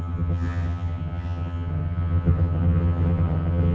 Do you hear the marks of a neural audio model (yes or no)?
yes